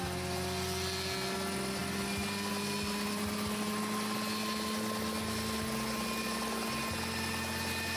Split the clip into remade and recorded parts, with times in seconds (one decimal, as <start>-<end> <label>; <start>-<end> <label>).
0.0-8.0 recorded